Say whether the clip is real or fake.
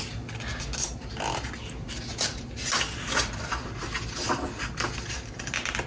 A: real